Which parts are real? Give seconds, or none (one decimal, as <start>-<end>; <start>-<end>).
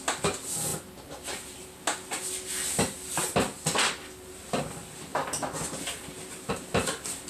0.0-7.3